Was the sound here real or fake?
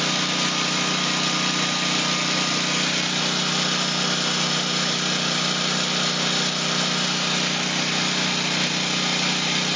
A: real